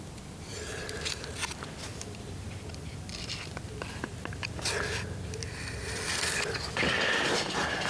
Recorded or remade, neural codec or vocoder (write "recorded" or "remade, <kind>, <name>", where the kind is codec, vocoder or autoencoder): recorded